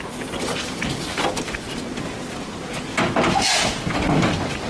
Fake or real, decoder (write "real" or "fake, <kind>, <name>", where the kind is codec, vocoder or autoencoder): real